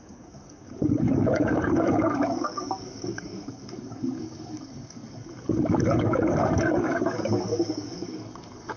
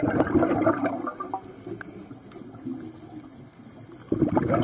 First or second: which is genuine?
second